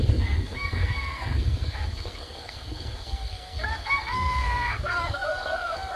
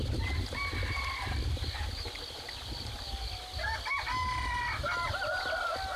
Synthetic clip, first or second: first